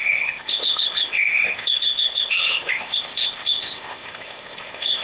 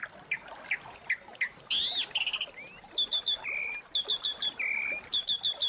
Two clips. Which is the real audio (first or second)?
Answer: second